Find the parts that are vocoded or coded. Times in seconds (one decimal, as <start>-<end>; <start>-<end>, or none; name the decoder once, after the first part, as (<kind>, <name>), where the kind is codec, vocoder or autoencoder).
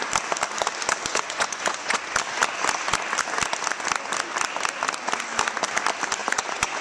1.1-2.0 (vocoder, Vocos); 6.2-6.8